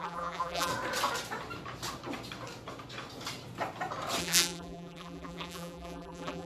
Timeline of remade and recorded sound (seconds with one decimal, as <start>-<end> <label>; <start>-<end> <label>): 0.0-0.7 remade; 0.7-4.2 recorded; 4.2-6.5 remade